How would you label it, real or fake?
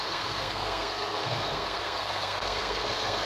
fake